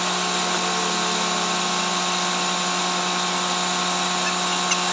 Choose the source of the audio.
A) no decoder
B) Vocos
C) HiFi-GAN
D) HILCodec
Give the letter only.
A